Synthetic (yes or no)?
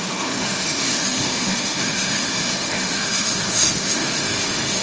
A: yes